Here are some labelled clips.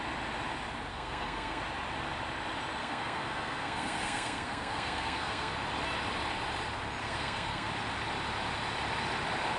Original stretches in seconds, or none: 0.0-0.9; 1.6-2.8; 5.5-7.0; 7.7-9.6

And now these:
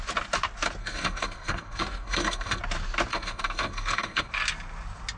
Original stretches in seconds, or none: 0.0-0.8; 2.6-3.1; 4.3-5.2

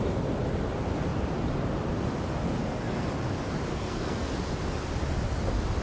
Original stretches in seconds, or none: 0.0-2.6; 3.1-3.7; 4.3-5.8

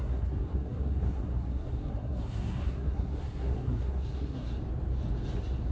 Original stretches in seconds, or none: 4.5-5.7

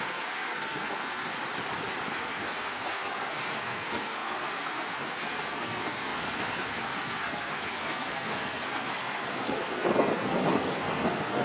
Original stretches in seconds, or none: 1.3-2.1